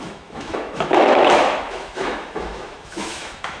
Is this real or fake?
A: fake